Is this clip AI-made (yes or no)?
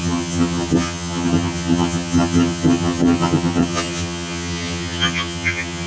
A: yes